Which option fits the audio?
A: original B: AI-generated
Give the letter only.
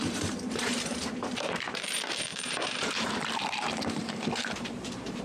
B